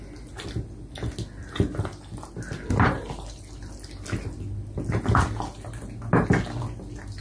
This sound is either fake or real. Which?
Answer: real